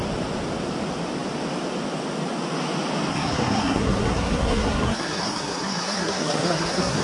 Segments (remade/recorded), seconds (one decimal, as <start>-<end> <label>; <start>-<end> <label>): 0.0-3.1 recorded; 3.1-7.0 remade